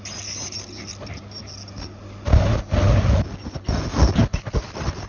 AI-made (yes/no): no